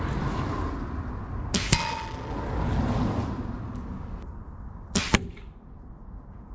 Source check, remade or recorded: recorded